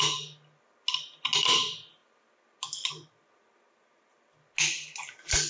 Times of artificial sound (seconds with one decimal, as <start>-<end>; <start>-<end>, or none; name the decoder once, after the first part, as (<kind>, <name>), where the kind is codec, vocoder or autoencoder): none